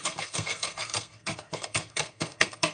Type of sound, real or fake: fake